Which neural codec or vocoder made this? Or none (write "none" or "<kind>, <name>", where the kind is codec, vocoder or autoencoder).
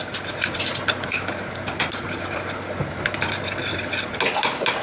none